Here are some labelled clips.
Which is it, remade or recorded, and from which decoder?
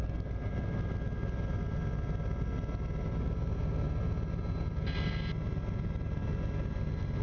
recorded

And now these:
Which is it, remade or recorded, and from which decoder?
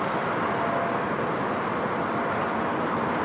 recorded